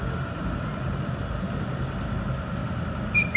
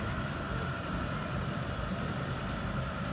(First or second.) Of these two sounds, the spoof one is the second